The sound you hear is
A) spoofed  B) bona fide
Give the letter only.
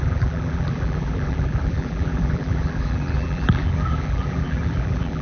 A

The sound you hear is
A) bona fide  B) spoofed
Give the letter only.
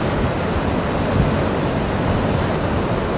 A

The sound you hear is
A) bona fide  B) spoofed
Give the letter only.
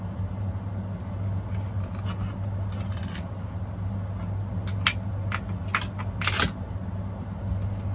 A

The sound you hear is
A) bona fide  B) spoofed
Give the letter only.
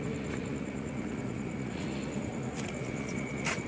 B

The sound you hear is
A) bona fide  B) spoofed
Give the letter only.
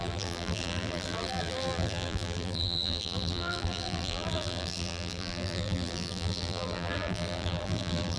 B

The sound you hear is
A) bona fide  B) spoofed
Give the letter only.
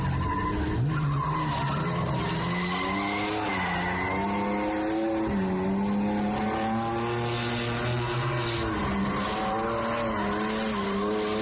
A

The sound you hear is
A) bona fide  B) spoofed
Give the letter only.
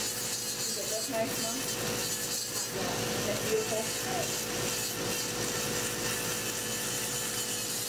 A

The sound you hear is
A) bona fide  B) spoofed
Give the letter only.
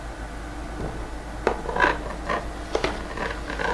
A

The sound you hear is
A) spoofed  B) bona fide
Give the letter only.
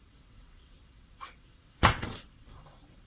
A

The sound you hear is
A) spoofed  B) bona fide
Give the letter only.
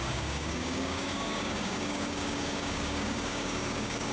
A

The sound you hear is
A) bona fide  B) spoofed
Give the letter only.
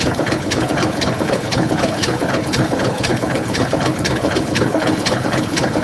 B